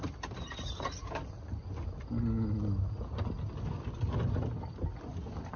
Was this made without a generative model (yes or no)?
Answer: yes